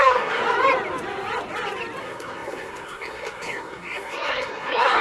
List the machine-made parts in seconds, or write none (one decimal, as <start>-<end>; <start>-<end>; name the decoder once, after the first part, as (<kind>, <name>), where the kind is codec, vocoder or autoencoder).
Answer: 0.0-0.4 (codec, SNAC); 2.0-5.0